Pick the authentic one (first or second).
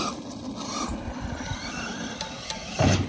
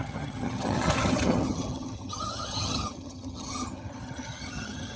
first